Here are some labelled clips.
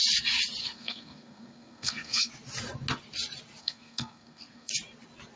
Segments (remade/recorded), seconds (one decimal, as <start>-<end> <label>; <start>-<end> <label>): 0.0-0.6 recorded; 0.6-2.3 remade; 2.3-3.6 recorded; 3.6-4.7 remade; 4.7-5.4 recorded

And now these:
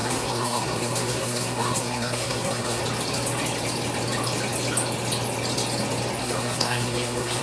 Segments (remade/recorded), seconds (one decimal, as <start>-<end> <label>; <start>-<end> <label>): 0.0-2.8 remade; 2.8-6.2 recorded; 6.2-7.4 remade

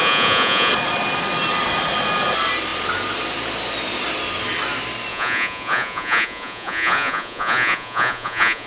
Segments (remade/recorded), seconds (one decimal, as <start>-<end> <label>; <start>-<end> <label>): 0.0-0.7 remade; 0.7-5.1 recorded; 5.1-8.7 remade